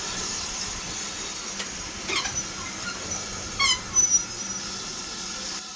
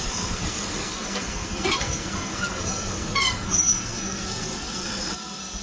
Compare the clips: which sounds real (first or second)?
first